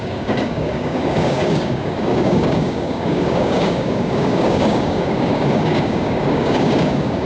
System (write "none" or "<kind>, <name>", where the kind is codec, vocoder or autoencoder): codec, DAC